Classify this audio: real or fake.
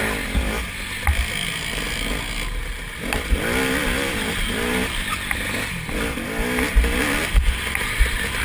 real